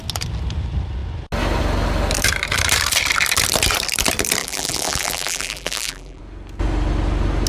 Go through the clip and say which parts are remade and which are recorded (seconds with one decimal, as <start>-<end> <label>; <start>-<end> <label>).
0.0-4.4 recorded; 4.4-6.2 remade; 6.2-7.5 recorded